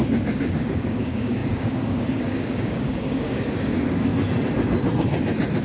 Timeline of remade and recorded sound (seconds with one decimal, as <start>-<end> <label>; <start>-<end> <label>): 0.0-4.1 remade; 4.1-5.6 recorded